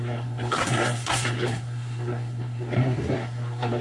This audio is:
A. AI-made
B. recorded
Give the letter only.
A